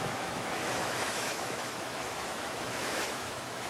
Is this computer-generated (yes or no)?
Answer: yes